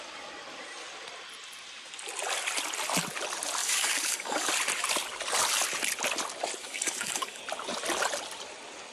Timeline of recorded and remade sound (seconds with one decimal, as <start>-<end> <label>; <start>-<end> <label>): 0.0-3.6 recorded; 3.6-4.5 remade; 4.5-6.6 recorded; 6.6-7.4 remade; 7.4-8.9 recorded